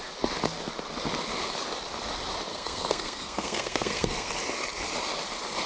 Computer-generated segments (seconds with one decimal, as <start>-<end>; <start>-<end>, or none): 2.5-4.3